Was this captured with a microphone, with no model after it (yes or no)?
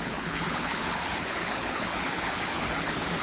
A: no